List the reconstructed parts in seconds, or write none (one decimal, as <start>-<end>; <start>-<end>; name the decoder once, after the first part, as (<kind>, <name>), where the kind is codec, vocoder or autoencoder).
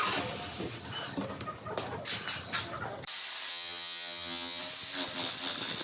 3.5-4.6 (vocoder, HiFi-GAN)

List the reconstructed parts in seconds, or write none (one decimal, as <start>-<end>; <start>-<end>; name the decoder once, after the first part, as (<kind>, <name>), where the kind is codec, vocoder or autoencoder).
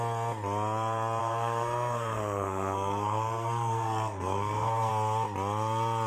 1.2-4.9 (codec, SNAC)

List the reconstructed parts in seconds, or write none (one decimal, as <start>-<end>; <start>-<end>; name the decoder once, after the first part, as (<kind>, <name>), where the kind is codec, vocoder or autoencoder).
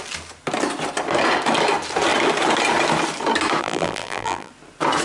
3.6-4.5 (vocoder, BigVGAN v2)